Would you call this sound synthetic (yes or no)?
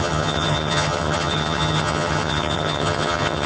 yes